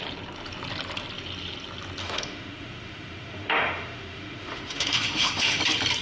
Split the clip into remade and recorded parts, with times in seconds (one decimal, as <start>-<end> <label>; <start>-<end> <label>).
0.0-2.0 recorded; 2.0-5.6 remade; 5.6-6.0 recorded

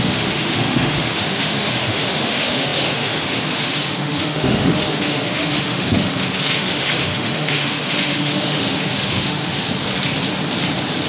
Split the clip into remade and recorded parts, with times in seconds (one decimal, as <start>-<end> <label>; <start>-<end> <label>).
0.0-9.6 remade; 9.6-11.1 recorded

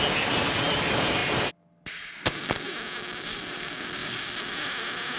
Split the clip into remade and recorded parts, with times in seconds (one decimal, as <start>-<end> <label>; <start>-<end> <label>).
0.0-5.2 recorded

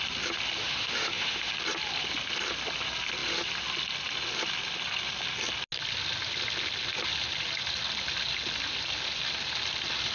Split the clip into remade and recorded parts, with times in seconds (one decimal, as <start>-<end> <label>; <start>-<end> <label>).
0.0-0.6 recorded; 0.6-1.5 remade; 1.5-10.1 recorded

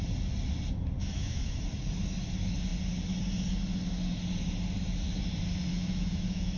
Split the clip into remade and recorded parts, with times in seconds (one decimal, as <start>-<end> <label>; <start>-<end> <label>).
0.0-1.0 recorded; 1.0-1.6 remade; 1.6-5.7 recorded; 5.7-6.6 remade

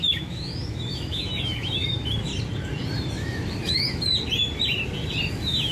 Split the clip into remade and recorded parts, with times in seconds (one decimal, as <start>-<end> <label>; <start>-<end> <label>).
0.0-2.3 remade; 2.3-3.1 recorded; 3.1-4.1 remade; 4.1-5.3 recorded; 5.3-5.7 remade